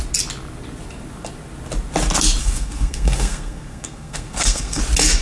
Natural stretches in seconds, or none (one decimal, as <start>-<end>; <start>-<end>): 0.0-2.4; 4.8-5.2